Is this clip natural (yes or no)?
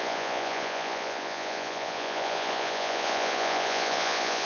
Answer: no